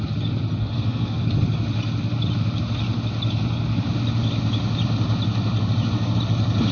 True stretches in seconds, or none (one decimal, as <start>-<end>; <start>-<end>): 0.0-0.6; 1.2-6.7